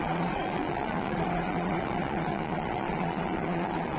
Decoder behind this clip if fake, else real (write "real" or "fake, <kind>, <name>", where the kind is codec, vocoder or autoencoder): fake, vocoder, Vocos